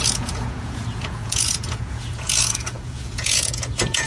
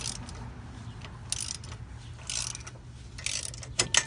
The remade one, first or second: first